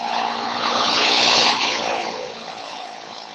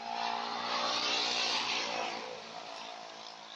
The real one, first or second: second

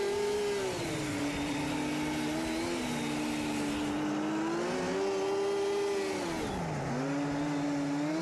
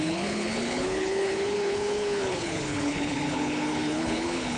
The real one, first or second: first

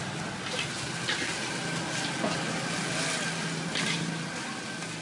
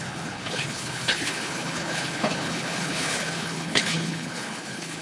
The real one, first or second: first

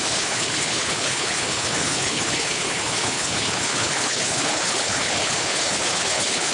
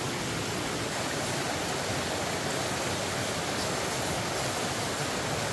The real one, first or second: second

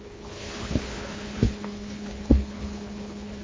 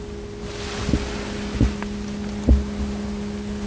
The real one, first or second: second